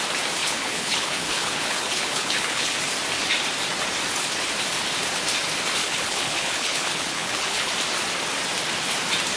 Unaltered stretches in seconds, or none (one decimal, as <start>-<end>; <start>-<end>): 0.0-0.4; 2.8-5.8; 7.7-9.4